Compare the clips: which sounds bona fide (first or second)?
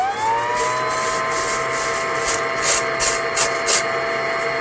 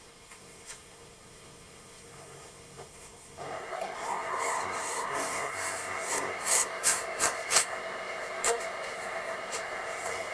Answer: first